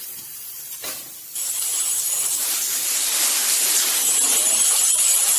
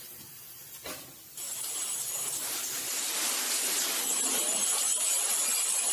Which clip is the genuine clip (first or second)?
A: second